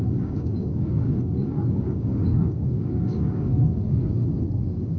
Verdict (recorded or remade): remade